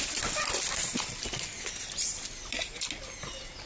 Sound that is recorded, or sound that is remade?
recorded